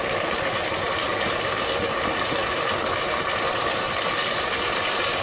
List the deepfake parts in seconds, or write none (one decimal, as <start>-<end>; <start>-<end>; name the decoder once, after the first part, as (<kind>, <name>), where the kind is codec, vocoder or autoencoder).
none